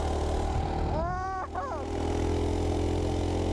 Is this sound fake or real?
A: real